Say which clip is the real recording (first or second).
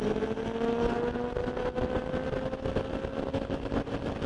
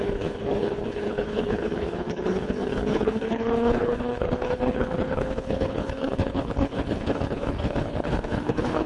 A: first